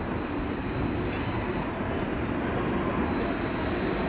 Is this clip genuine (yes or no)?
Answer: yes